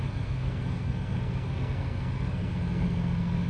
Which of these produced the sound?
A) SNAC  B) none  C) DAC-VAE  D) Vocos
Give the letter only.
A